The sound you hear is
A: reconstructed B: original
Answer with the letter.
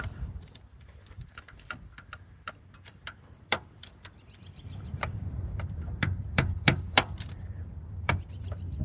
A